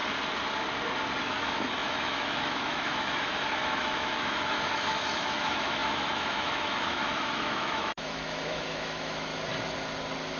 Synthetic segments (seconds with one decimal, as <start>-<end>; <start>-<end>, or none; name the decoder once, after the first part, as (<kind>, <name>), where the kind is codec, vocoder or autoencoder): 1.2-9.3 (autoencoder, DAC-VAE)

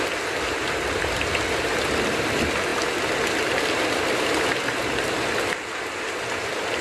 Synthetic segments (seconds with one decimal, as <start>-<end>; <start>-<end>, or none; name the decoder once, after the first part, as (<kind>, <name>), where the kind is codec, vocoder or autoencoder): none

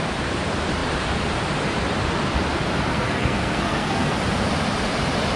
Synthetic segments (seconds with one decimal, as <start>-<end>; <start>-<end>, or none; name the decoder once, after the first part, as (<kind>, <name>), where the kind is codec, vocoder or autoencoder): 2.9-4.2 (codec, SNAC)

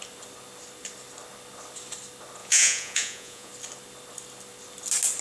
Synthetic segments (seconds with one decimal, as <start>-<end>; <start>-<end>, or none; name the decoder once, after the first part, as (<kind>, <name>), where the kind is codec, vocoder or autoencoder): 2.4-3.5 (vocoder, Vocos)

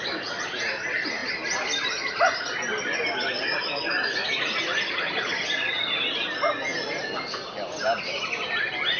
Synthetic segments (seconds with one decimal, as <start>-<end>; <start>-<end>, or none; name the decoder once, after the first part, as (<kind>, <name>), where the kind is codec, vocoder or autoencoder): none

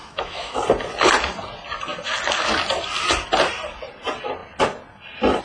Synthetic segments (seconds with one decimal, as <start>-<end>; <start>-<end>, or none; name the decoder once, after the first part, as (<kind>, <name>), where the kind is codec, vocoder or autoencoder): 0.0-0.6 (autoencoder, DAC-VAE)

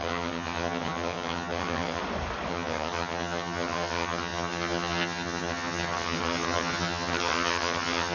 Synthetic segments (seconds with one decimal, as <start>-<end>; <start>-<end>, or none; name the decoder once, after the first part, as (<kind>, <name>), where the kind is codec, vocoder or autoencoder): 0.0-2.0 (vocoder, HiFi-GAN); 2.5-8.1

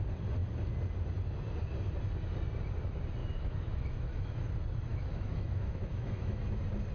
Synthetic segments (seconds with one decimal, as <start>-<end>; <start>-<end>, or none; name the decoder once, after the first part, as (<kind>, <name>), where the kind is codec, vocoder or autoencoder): 3.2-4.5 (autoencoder, DAC-VAE); 4.9-6.4